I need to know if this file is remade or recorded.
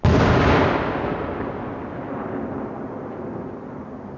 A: recorded